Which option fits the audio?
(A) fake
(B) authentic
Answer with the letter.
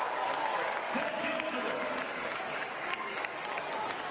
A